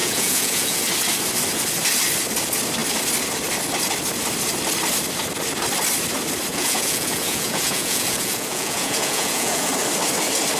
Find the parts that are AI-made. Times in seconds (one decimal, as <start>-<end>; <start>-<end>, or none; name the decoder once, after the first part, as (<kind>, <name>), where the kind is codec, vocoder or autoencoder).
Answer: 0.0-0.8 (vocoder, Vocos); 6.5-9.7